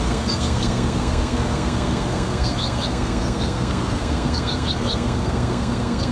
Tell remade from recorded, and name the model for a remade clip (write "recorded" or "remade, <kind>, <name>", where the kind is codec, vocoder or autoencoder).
remade, codec, SNAC